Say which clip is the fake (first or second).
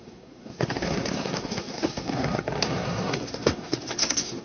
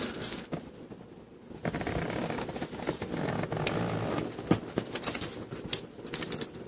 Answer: first